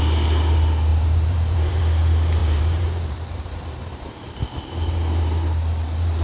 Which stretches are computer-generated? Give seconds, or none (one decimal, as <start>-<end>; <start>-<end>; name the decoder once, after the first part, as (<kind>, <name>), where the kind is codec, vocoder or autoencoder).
0.9-1.8 (vocoder, BigVGAN v2); 2.4-4.4